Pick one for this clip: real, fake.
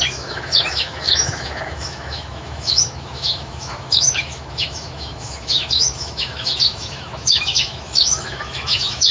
fake